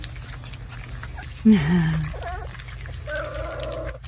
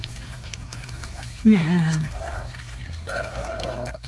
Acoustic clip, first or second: first